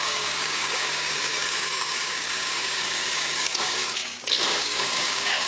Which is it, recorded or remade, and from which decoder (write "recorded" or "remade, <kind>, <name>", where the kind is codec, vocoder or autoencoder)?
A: remade, codec, DAC